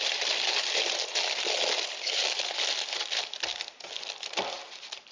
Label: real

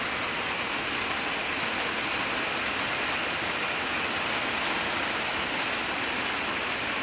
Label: real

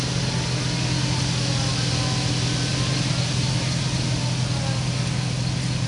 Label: real